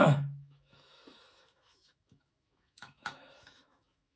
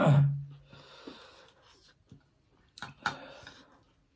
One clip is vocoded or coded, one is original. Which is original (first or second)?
second